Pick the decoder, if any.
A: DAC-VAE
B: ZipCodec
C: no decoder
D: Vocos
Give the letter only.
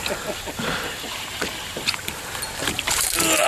C